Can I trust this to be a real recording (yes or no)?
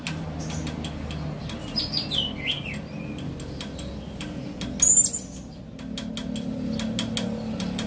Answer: yes